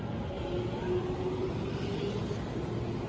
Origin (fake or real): real